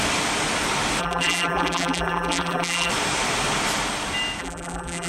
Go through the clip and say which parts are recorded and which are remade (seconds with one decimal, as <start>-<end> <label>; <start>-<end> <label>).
0.0-1.0 recorded; 1.0-2.9 remade; 2.9-4.4 recorded; 4.4-5.1 remade